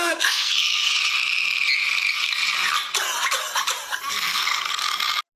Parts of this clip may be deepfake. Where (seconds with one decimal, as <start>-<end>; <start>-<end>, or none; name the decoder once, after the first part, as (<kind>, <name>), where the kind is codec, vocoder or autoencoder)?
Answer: 0.0-0.9 (codec, SNAC); 4.1-4.8